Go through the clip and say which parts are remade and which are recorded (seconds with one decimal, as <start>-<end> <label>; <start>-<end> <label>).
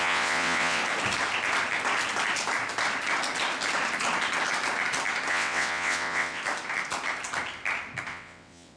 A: 0.0-0.8 remade; 0.8-5.3 recorded; 5.3-6.4 remade; 6.4-8.1 recorded; 8.1-8.8 remade